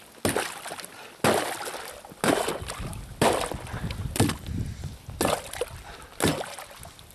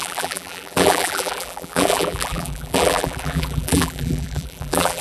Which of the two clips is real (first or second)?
first